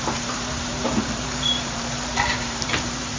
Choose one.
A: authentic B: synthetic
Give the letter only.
B